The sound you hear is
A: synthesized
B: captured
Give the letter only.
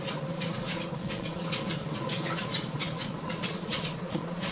A